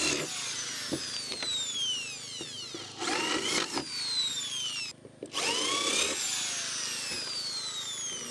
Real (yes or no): yes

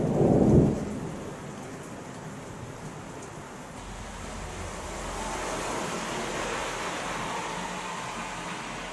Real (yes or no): yes